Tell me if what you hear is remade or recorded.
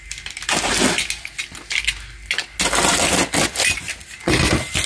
recorded